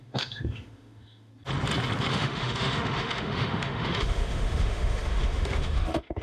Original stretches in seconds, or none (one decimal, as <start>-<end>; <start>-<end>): 1.3-2.1